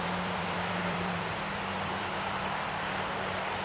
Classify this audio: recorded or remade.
remade